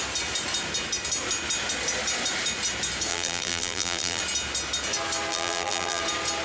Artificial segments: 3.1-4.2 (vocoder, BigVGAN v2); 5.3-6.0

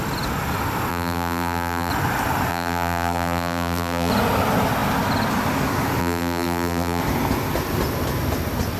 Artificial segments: 0.9-1.9 (vocoder, BigVGAN v2); 2.5-4.1; 6.0-7.0

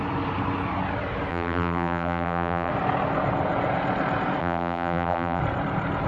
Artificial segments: 1.3-2.7 (vocoder, BigVGAN v2); 4.4-5.4

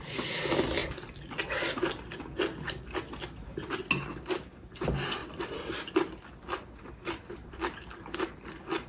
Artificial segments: 0.8-1.4 (vocoder, BigVGAN v2); 4.1-4.7; 5.2-8.5

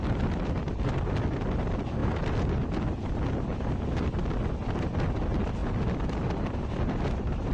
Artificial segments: none

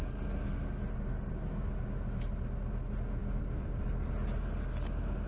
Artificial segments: 3.2-4.1 (vocoder, BigVGAN v2)

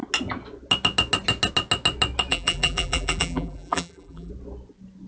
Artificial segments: 2.3-4.3 (vocoder, BigVGAN v2)